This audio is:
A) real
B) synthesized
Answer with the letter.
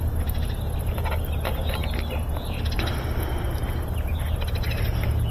A